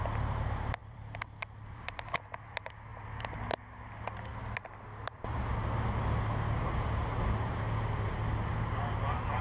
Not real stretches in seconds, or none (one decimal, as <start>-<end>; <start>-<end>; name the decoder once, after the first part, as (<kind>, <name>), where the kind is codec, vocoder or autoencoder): 0.8-2.0 (vocoder, BigVGAN v2); 4.3-5.4